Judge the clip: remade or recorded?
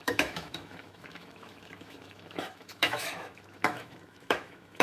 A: remade